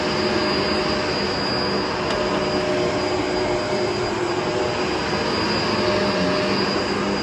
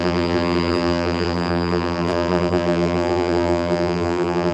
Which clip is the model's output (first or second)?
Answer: second